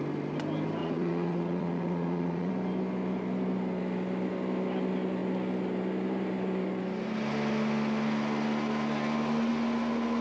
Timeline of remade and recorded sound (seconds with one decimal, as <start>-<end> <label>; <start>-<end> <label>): 0.0-0.8 recorded; 0.8-2.5 remade; 2.5-10.2 recorded